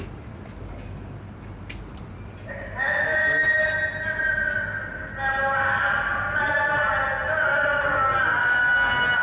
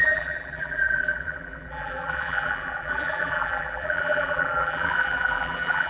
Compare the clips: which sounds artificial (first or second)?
second